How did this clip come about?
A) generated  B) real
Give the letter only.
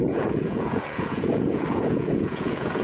A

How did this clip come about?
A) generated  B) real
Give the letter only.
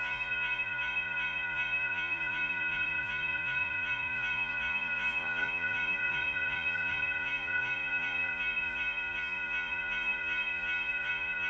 A